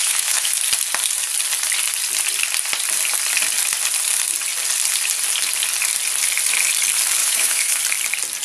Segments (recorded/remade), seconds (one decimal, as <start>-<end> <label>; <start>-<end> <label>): 0.0-0.6 remade; 0.6-7.2 recorded; 7.2-7.8 remade; 7.8-8.4 recorded